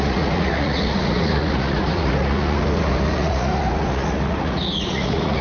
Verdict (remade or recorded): remade